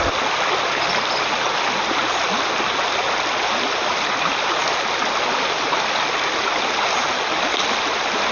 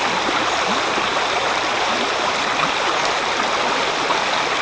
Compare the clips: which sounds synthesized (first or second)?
second